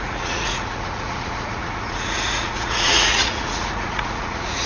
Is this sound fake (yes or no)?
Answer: yes